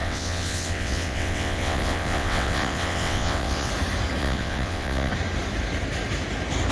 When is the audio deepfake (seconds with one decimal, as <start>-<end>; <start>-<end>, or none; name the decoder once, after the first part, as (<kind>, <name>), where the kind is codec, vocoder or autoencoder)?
0.0-3.7 (vocoder, WaveNeXt); 4.2-5.1